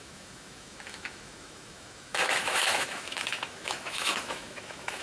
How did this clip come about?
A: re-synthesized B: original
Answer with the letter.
A